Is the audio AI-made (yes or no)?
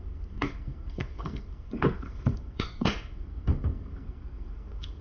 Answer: yes